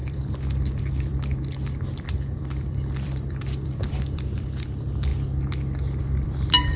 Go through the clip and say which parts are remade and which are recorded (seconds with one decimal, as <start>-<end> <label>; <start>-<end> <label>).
0.0-5.1 remade; 5.1-6.0 recorded; 6.0-6.8 remade